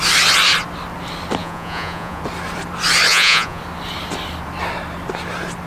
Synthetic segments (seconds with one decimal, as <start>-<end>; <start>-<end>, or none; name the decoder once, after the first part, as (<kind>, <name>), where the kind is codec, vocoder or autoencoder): 1.4-2.2 (vocoder, Vocos); 3.1-3.6